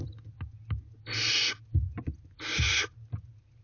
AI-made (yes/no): no